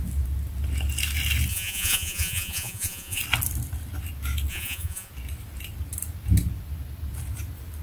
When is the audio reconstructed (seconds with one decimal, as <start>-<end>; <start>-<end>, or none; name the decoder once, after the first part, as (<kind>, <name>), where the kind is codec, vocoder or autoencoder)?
1.5-3.2 (vocoder, Vocos); 4.5-5.1